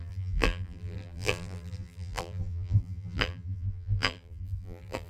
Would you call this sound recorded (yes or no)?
no